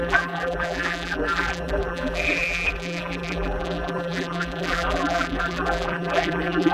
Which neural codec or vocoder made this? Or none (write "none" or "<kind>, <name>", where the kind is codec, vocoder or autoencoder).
vocoder, BigVGAN v2